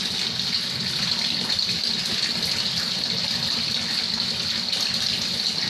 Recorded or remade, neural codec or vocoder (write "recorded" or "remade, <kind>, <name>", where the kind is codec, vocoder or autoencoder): recorded